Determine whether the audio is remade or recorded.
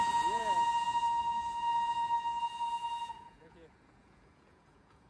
remade